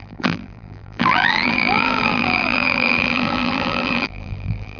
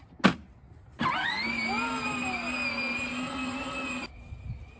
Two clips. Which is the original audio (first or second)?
second